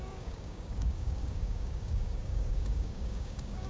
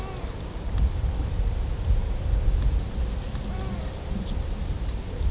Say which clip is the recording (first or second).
second